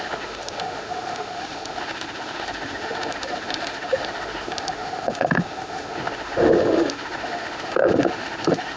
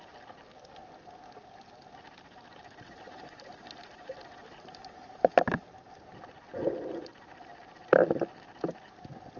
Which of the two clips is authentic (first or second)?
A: second